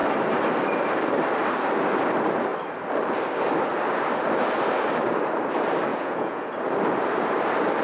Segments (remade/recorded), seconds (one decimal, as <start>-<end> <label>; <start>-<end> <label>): 0.0-5.9 recorded; 5.9-6.5 remade; 6.5-7.8 recorded